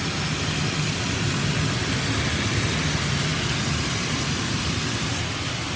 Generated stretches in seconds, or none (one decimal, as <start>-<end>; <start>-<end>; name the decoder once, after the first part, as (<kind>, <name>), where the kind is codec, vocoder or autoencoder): none

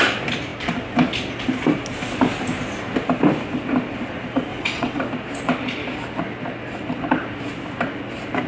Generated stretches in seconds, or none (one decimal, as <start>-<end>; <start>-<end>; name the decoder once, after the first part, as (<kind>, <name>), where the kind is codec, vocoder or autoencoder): 4.5-5.0 (vocoder, WaveNeXt)

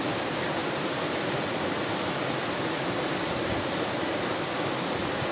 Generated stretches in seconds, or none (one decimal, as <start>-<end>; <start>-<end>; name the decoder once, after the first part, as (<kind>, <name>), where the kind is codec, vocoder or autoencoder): none

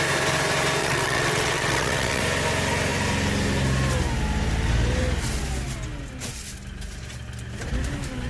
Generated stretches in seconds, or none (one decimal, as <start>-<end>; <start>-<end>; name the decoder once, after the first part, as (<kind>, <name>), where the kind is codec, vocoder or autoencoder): 0.8-2.2 (vocoder, WaveNeXt)

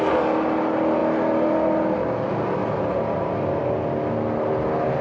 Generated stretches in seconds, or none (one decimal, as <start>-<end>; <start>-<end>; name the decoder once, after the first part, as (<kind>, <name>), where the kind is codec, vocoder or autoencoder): none

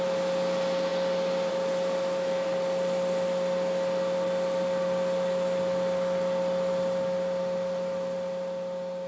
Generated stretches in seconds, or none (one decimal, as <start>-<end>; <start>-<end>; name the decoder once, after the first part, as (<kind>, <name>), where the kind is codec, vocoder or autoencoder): none

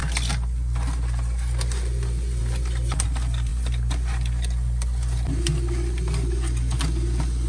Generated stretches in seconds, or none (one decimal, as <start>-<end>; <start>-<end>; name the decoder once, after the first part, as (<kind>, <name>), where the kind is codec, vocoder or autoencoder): none

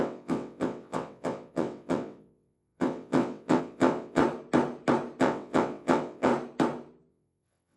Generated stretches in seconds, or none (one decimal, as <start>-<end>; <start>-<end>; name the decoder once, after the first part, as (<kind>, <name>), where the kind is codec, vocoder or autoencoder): 0.0-4.2 (vocoder, WaveNeXt); 5.2-6.3; 7.1-7.8